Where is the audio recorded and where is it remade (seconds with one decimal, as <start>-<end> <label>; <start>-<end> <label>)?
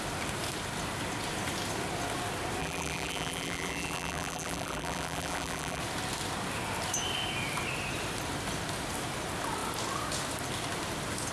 0.0-2.6 recorded; 2.6-5.8 remade; 5.8-11.3 recorded